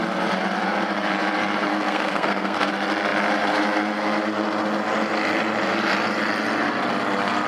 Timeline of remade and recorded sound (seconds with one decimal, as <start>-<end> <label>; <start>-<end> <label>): 0.0-1.7 recorded; 1.7-2.7 remade; 2.7-7.5 recorded